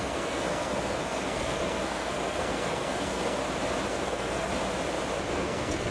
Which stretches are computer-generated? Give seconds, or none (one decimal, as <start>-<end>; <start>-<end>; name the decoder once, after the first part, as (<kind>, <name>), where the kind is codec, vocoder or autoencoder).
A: 0.0-3.4 (codec, SNAC); 3.9-4.5; 5.3-5.9